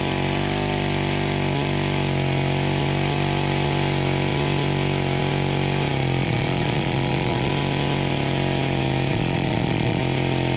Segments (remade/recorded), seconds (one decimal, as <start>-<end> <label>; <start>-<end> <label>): 0.0-6.2 recorded; 6.2-7.5 remade; 7.5-9.1 recorded; 9.1-10.0 remade; 10.0-10.6 recorded